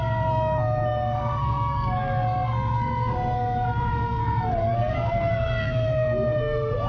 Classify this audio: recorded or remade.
remade